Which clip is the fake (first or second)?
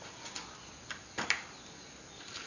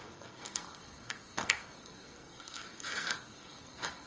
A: second